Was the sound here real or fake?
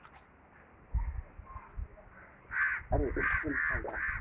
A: real